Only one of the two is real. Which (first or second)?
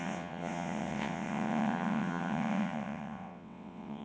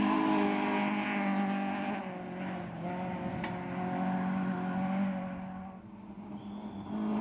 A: second